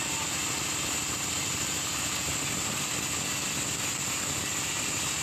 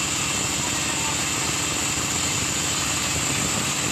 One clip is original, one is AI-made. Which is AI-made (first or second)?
first